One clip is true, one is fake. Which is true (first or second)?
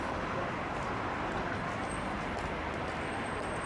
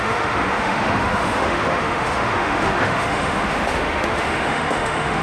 first